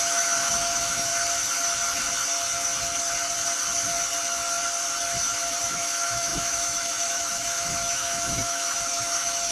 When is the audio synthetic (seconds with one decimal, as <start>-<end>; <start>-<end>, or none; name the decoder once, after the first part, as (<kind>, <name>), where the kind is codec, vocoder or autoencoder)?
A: 0.0-1.1 (autoencoder, DAC-VAE); 5.6-9.5